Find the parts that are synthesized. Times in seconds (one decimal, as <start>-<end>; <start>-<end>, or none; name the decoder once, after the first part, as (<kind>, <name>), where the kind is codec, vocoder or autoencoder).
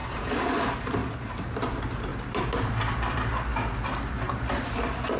0.0-1.0 (vocoder, BigVGAN v2); 1.6-2.1; 2.6-3.5; 4.1-5.2